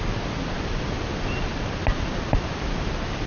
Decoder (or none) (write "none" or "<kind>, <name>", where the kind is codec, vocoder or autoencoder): none